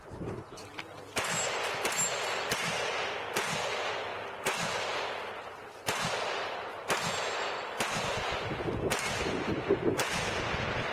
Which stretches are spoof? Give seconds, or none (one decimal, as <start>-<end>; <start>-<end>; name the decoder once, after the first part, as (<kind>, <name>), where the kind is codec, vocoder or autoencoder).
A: none